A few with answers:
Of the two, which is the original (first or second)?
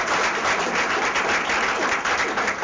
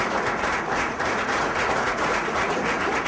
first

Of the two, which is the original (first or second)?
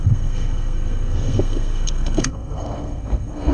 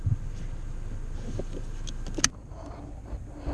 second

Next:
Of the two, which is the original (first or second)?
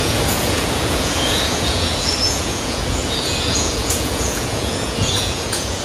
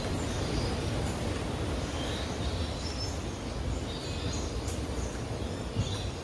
second